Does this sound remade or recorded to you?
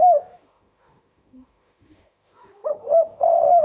remade